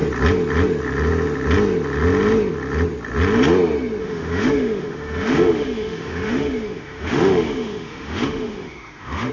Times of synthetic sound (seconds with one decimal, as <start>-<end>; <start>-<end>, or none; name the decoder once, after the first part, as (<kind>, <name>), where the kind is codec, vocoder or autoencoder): 4.0-9.3 (autoencoder, DAC-VAE)